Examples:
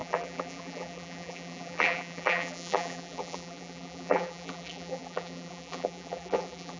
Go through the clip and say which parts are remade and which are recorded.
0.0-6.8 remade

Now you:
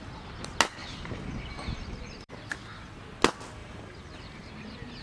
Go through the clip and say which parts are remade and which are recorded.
0.0-0.8 recorded; 0.8-2.3 remade; 2.3-3.6 recorded; 3.6-4.5 remade; 4.5-5.0 recorded

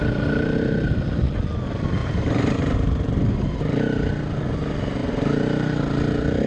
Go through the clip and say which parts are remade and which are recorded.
0.0-2.0 recorded; 2.0-4.1 remade; 4.1-5.0 recorded; 5.0-5.8 remade; 5.8-6.5 recorded

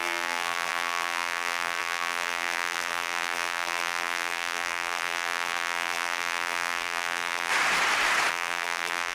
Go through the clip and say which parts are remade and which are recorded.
0.0-7.5 remade; 7.5-8.3 recorded; 8.3-9.1 remade

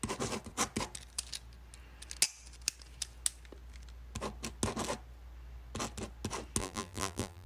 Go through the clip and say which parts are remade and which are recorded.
0.0-6.6 recorded; 6.6-7.5 remade

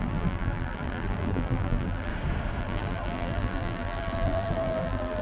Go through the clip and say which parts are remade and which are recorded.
0.0-2.1 remade; 2.1-2.6 recorded; 2.6-5.2 remade

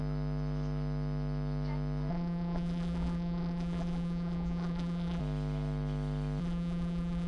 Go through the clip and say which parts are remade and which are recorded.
0.0-2.1 recorded; 2.1-5.2 remade; 5.2-6.4 recorded; 6.4-7.3 remade

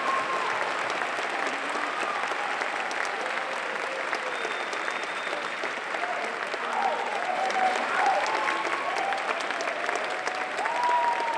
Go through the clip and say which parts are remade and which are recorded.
0.0-5.0 recorded; 5.0-6.1 remade; 6.1-7.1 recorded; 7.1-7.9 remade; 7.9-11.4 recorded